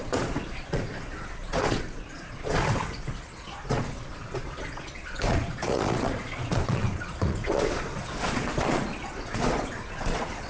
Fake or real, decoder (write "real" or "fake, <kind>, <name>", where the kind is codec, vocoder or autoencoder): fake, vocoder, Vocos